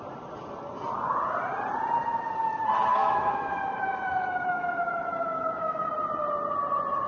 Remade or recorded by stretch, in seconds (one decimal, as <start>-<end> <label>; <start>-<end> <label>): 0.0-2.9 recorded; 2.9-5.9 remade; 5.9-7.1 recorded